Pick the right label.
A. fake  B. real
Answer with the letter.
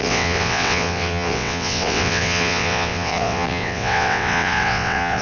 A